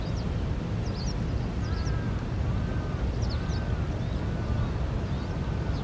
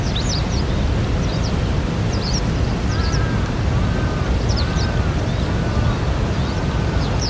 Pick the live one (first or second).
first